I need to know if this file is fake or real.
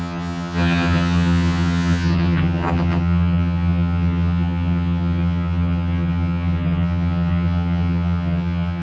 fake